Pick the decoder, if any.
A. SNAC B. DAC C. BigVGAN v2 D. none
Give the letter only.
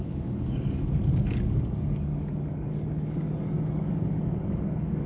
B